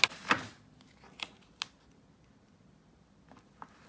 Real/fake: real